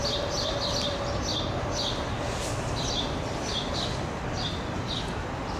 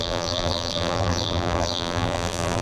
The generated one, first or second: second